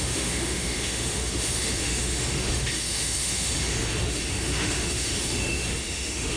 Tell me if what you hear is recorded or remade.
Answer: remade